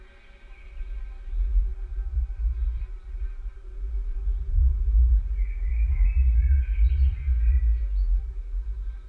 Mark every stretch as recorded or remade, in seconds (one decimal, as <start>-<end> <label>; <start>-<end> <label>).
0.0-1.7 recorded; 1.7-3.8 remade; 3.8-9.1 recorded